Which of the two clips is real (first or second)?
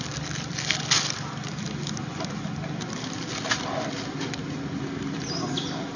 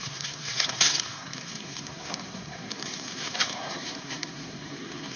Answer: first